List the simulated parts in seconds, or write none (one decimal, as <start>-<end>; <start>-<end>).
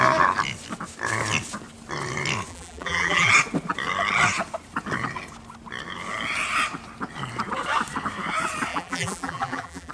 2.5-3.3; 8.7-9.9